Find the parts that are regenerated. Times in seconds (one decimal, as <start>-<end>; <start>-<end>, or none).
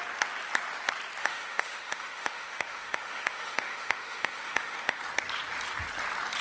1.2-5.0